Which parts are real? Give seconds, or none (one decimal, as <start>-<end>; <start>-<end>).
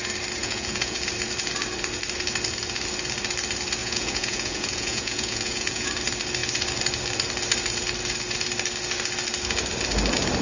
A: 0.0-0.4; 1.0-3.8; 5.9-10.4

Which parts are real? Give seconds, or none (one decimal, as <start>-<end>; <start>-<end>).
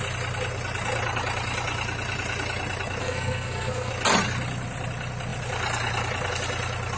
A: 0.0-3.0; 3.9-7.0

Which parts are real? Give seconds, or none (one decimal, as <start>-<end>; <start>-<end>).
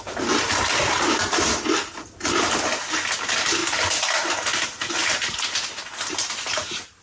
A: 0.0-7.0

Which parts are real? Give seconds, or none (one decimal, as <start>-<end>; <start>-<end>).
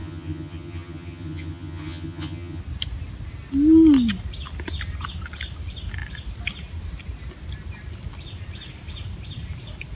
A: 2.6-10.0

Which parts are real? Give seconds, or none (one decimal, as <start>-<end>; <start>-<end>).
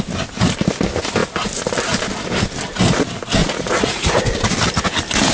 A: 0.0-3.4; 4.2-5.3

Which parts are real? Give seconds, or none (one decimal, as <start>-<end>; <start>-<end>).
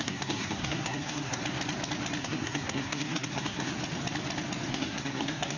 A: 1.4-2.2; 3.7-4.7